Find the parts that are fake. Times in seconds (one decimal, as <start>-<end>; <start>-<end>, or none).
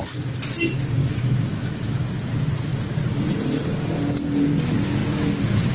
1.0-2.0